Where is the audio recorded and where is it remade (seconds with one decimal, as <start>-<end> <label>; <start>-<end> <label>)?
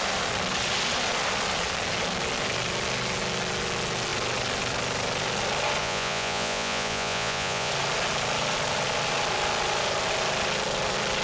0.0-5.8 recorded; 5.8-7.7 remade; 7.7-11.2 recorded